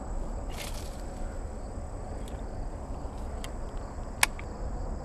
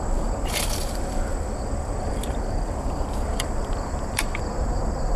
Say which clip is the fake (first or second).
second